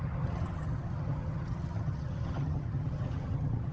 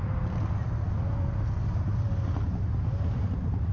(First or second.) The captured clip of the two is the second